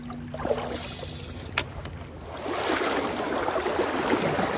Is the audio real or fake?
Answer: real